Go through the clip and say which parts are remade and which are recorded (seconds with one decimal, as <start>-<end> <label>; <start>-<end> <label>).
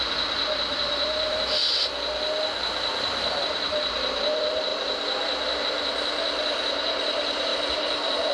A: 0.0-1.6 remade; 1.6-3.4 recorded; 3.4-4.7 remade; 4.7-5.6 recorded; 5.6-8.3 remade